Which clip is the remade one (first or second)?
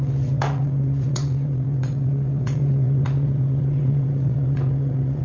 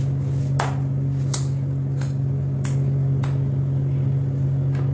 first